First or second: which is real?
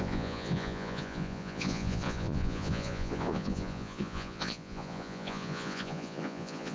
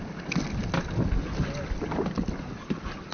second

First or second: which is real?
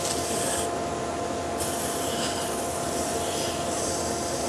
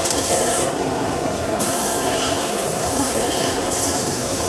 first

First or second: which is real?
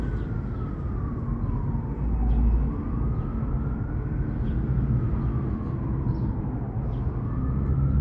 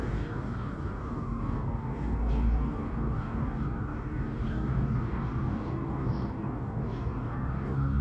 first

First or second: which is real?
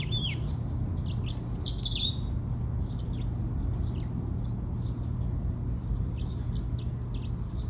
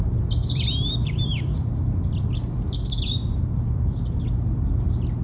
first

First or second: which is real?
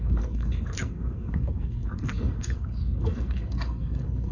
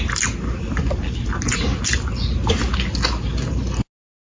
second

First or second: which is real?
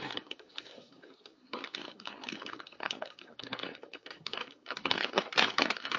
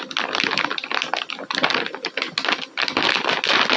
second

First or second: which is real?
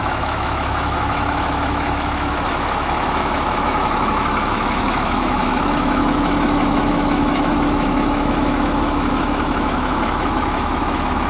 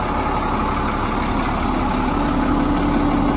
second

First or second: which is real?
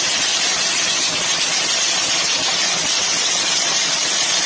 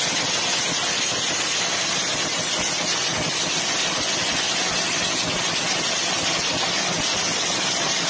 second